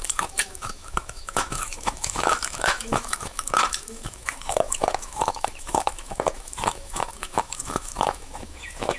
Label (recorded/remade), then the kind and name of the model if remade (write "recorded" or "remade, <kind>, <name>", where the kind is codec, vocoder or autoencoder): remade, autoencoder, DAC-VAE